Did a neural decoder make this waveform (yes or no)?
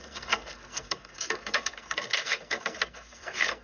yes